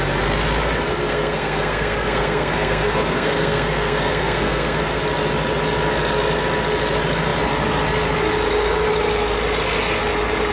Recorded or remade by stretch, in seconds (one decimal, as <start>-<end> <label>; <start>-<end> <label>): 0.0-0.9 recorded; 0.9-5.0 remade; 5.0-10.5 recorded